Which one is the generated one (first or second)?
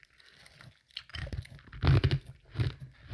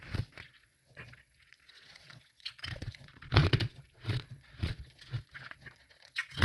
second